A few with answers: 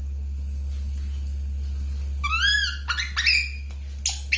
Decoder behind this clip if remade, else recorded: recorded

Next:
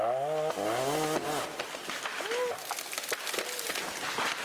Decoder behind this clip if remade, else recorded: recorded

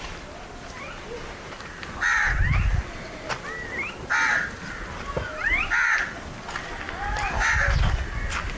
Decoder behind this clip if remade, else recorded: recorded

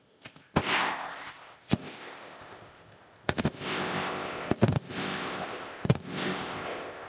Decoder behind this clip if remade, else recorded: remade, codec, ZipCodec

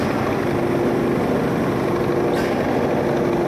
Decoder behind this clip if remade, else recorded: recorded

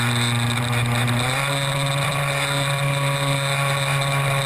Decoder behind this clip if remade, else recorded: remade, vocoder, BigVGAN v2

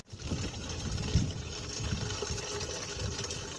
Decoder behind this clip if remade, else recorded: recorded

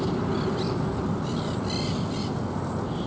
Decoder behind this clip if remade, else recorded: recorded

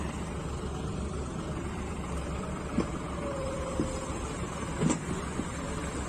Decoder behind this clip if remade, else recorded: recorded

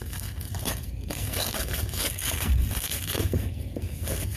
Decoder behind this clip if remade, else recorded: remade, codec, SNAC